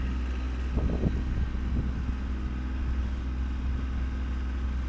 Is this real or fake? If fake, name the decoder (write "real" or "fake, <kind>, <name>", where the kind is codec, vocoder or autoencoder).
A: real